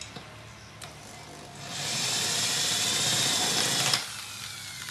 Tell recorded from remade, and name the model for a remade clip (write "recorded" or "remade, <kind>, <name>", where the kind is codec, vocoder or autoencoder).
recorded